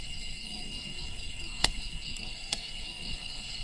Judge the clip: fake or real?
fake